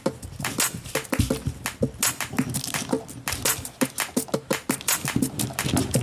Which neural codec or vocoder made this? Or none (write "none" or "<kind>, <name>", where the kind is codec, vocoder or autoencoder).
none